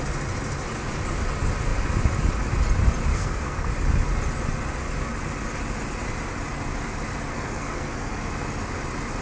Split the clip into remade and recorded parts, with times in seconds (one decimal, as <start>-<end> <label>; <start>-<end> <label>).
0.0-3.1 recorded; 3.1-3.7 remade; 3.7-7.3 recorded; 7.3-8.3 remade; 8.3-9.2 recorded